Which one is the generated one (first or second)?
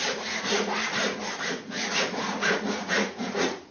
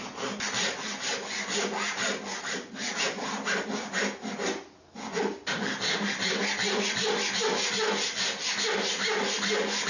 first